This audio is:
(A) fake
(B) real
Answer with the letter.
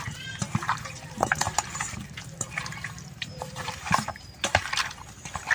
A